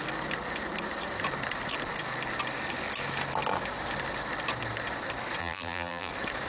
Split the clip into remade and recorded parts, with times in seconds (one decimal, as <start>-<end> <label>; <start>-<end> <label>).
0.0-5.4 recorded; 5.4-6.1 remade; 6.1-6.5 recorded